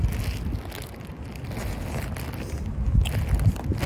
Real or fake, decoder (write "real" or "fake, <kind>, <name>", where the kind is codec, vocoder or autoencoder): real